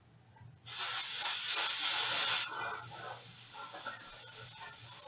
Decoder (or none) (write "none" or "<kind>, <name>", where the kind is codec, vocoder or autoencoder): none